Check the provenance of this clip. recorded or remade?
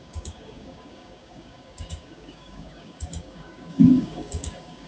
remade